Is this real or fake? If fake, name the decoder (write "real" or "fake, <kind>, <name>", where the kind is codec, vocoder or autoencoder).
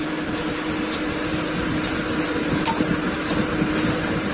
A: real